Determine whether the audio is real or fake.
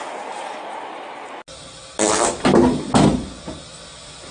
real